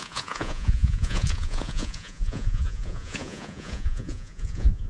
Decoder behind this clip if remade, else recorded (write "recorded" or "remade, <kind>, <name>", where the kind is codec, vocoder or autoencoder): remade, vocoder, Vocos